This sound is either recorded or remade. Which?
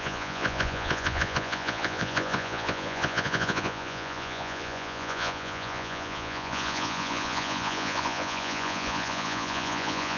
remade